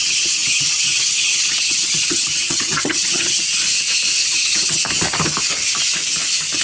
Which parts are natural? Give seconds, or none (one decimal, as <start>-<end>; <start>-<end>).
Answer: 3.4-4.2; 4.8-6.6